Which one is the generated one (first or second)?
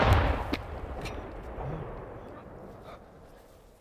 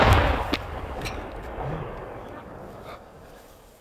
second